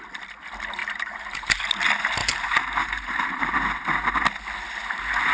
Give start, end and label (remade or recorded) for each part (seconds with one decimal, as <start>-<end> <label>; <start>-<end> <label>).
0.0-0.8 recorded; 0.8-1.6 remade; 1.6-2.2 recorded; 2.2-3.5 remade; 3.5-5.3 recorded